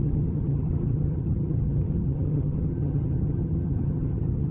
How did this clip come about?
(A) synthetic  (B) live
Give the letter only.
A